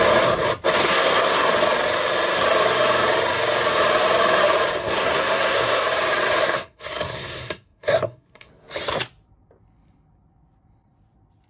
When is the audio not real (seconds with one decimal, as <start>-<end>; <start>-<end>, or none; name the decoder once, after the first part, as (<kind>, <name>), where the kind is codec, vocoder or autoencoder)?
0.8-1.5 (codec, SNAC); 4.8-5.8; 6.4-8.5